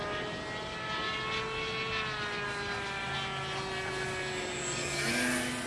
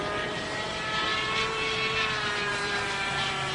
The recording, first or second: first